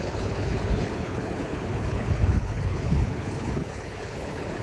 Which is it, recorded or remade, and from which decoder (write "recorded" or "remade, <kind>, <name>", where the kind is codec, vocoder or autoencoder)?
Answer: remade, codec, HILCodec